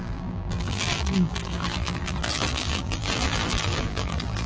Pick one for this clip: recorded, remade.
remade